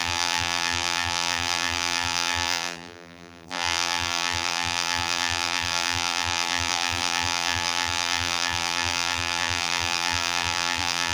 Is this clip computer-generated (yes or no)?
yes